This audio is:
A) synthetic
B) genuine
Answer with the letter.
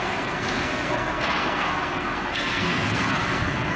A